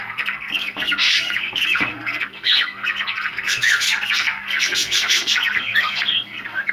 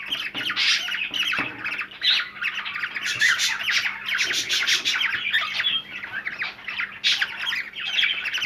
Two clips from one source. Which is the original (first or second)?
second